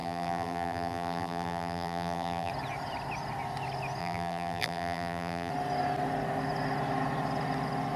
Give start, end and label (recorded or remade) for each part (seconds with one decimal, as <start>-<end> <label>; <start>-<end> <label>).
0.0-2.5 remade; 2.5-4.0 recorded; 4.0-5.5 remade; 5.5-8.0 recorded